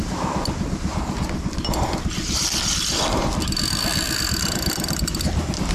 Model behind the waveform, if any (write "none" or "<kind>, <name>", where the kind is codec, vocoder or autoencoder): none